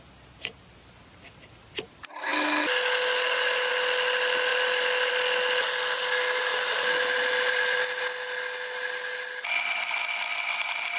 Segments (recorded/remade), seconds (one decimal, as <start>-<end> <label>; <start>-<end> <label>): 0.0-4.5 recorded; 4.5-5.1 remade; 5.1-6.5 recorded; 6.5-8.0 remade; 8.0-11.0 recorded

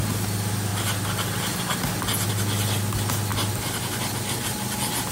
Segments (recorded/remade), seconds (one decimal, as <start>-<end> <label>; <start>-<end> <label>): 0.0-5.1 recorded

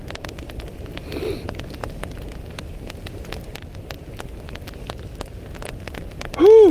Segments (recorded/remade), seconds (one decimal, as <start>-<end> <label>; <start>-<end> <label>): 0.0-6.7 recorded

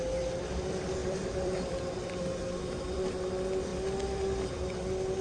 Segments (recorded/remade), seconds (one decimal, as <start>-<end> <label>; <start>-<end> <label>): 0.0-1.0 recorded; 1.0-3.2 remade; 3.2-5.2 recorded

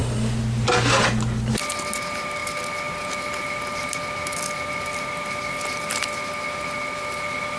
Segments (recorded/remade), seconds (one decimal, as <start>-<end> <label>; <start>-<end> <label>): 0.0-7.6 recorded